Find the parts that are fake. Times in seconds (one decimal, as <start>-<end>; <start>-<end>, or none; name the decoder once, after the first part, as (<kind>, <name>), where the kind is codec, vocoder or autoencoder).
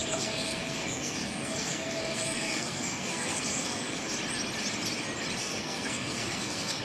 0.0-4.1 (codec, SNAC); 5.4-6.8